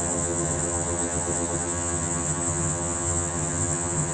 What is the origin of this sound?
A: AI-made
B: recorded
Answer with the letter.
A